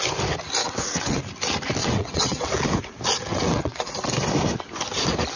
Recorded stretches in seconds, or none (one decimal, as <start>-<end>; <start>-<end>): 0.0-0.6; 1.2-1.8; 2.5-3.3; 3.9-5.4